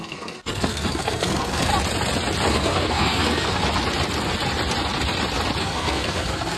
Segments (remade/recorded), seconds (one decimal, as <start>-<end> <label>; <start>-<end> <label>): 0.0-1.7 remade; 1.7-2.5 recorded; 2.5-3.6 remade; 3.6-5.6 recorded; 5.6-6.6 remade